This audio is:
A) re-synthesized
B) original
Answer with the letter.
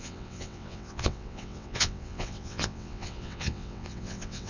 A